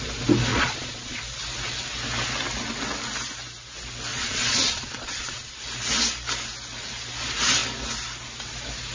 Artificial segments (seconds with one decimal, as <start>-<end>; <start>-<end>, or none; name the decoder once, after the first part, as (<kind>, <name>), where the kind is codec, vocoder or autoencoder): 0.5-1.2 (vocoder, Vocos); 4.1-5.5